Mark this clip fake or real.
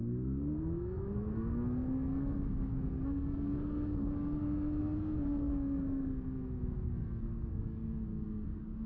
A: fake